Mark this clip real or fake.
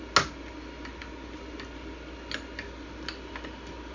real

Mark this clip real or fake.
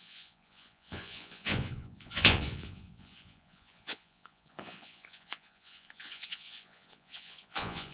fake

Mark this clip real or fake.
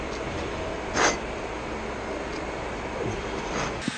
real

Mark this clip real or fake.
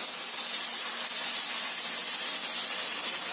real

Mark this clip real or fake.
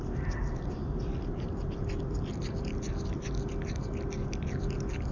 real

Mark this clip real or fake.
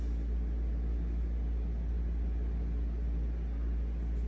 real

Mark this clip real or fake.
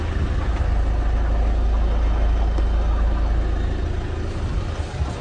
real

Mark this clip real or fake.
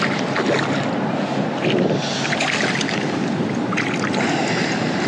real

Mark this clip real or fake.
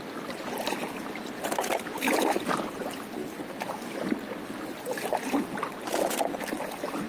real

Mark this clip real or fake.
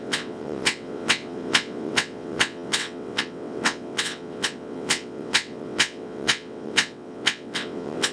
fake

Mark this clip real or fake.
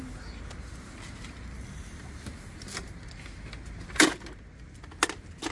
real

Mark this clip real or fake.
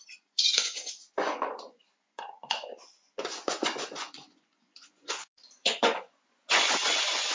fake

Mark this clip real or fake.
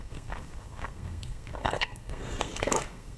fake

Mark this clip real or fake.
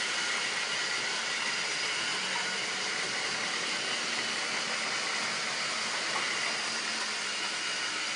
real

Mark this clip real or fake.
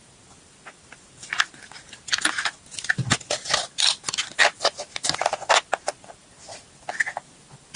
real